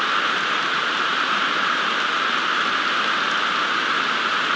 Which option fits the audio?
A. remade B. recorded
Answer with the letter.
B